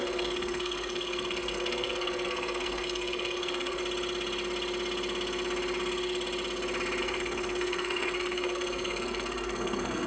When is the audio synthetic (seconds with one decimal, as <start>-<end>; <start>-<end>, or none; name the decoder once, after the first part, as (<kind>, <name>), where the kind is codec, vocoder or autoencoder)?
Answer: 0.0-3.8 (codec, SNAC); 7.0-10.1